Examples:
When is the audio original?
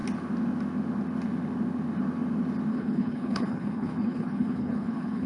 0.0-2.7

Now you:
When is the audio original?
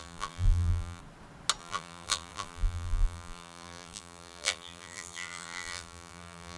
1.0-1.6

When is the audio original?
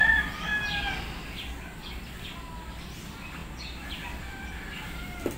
0.5-3.0